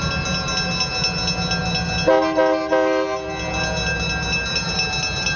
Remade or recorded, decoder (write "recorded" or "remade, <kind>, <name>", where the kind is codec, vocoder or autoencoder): recorded